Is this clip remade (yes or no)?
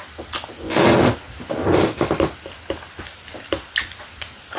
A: no